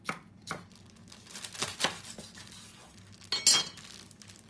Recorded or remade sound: recorded